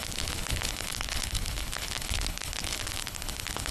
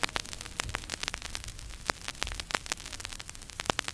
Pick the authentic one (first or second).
second